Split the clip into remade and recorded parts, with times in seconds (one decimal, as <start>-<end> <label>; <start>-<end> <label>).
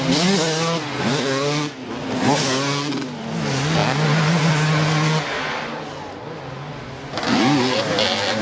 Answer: 0.0-8.4 recorded